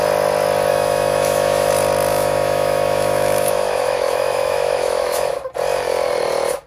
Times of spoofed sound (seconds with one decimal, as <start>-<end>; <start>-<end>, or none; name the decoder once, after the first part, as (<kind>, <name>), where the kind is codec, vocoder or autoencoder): 0.7-1.7 (autoencoder, DAC-VAE); 2.1-5.4